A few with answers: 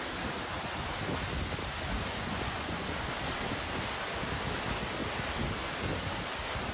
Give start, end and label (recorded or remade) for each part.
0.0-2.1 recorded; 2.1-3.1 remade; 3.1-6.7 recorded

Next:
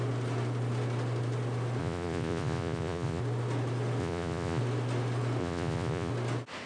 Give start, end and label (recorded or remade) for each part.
0.0-1.8 recorded; 1.8-3.2 remade; 3.2-4.0 recorded; 4.0-4.6 remade; 4.6-5.4 recorded; 5.4-6.1 remade; 6.1-6.7 recorded

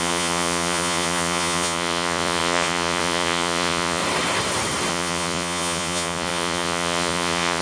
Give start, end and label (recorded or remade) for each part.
0.0-4.0 remade; 4.0-4.9 recorded; 4.9-7.6 remade

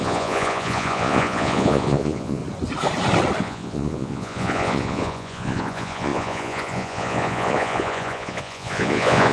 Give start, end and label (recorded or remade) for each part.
0.0-2.4 remade; 2.4-3.4 recorded; 3.4-9.3 remade

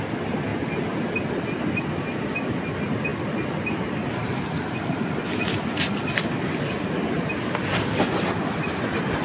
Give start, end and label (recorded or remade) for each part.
0.0-9.2 recorded